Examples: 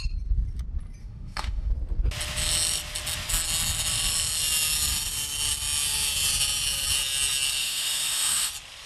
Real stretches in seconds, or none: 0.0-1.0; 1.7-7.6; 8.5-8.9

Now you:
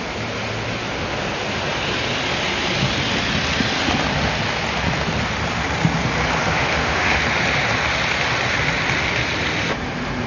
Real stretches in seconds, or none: 0.0-6.5; 7.2-10.3